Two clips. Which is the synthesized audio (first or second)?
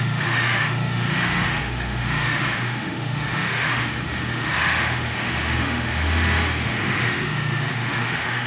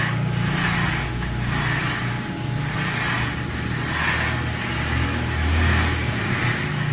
first